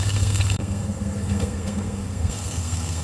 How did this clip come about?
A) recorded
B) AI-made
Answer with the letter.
B